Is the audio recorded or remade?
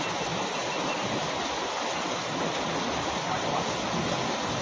recorded